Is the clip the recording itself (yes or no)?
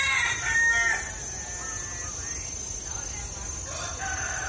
yes